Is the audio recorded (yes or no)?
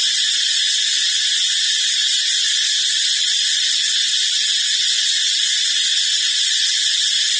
yes